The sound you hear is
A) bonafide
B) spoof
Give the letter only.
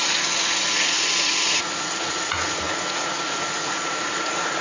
B